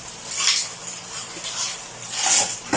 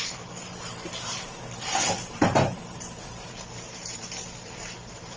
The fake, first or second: second